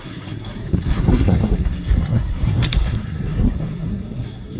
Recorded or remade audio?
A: remade